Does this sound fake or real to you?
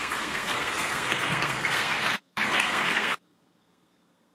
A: fake